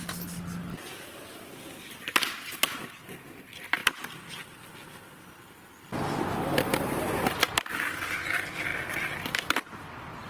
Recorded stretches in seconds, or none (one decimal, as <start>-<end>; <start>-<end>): 0.0-10.3